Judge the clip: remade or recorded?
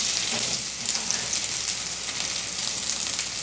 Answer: recorded